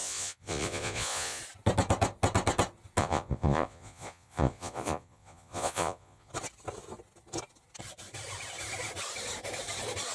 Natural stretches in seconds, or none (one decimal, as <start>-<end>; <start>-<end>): 1.4-3.0; 6.3-10.1